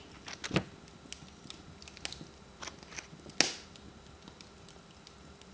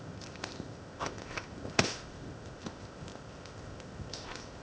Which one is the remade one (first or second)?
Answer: second